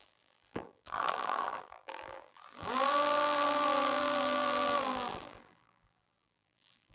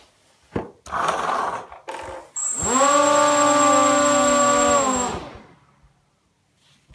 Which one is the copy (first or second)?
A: first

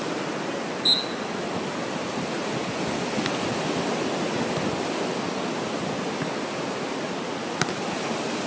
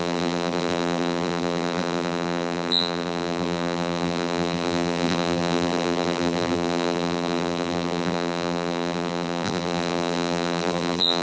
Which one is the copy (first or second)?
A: second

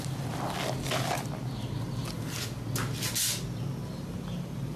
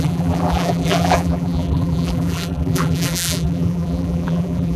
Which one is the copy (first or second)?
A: second